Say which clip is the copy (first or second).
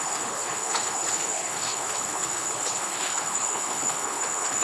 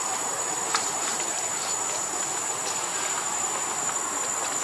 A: first